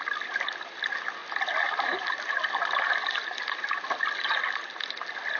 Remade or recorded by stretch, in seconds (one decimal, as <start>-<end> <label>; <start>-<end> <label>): 0.0-5.4 recorded